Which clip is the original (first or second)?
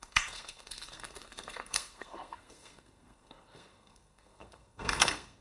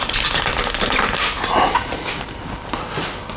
second